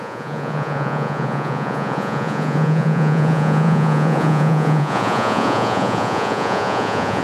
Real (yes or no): no